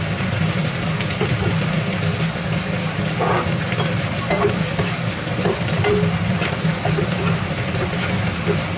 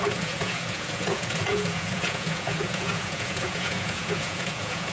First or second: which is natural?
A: first